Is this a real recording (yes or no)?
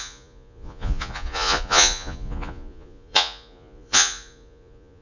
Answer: no